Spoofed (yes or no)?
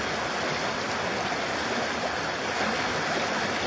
no